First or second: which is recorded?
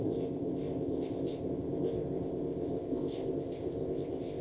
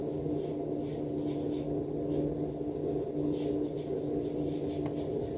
second